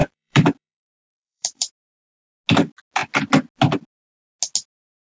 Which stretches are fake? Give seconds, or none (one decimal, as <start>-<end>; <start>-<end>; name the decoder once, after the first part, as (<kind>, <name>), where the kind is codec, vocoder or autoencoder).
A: 0.0-1.7 (vocoder, BigVGAN v2)

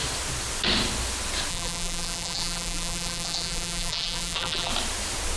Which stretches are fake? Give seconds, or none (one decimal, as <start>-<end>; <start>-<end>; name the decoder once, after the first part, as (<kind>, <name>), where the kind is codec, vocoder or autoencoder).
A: 1.5-4.7 (vocoder, BigVGAN v2)

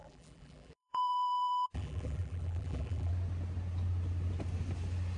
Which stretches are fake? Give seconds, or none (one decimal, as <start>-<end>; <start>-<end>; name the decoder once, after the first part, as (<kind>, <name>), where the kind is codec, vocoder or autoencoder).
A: 0.0-3.1 (vocoder, BigVGAN v2)